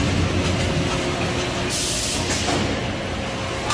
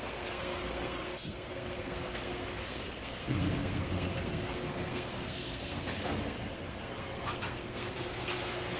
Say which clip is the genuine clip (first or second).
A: first